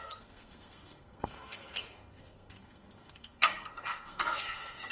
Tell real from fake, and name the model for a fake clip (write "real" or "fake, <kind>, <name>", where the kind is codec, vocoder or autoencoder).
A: fake, codec, SNAC